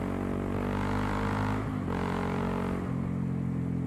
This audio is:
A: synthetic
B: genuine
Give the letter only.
B